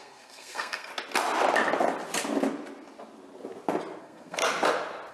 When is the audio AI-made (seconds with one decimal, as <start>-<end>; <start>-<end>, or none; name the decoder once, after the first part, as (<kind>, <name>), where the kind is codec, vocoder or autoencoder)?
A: 0.0-0.9 (codec, SNAC); 4.0-4.4